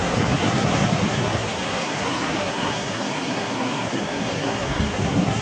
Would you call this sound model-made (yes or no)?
yes